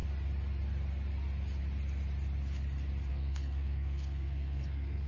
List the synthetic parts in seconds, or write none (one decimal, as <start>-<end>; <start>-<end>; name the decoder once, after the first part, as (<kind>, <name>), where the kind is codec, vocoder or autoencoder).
3.1-5.1 (codec, SNAC)